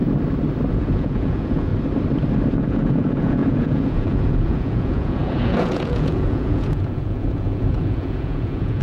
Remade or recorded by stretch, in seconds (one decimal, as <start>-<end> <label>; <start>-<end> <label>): 0.0-0.7 recorded; 0.7-1.7 remade; 1.7-2.5 recorded; 2.5-8.8 remade